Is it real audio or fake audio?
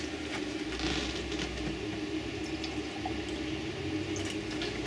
real